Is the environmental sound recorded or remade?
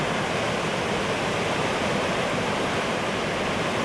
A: recorded